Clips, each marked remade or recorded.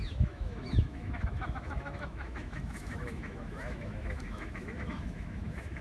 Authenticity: remade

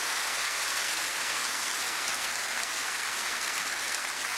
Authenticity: remade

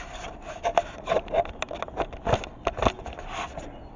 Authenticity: recorded